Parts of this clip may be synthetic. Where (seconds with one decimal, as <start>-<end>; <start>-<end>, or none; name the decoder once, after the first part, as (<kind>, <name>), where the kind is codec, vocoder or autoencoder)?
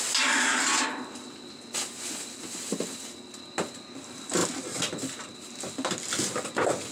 none